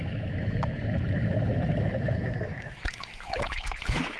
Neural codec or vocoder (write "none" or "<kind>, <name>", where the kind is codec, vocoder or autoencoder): autoencoder, DAC-VAE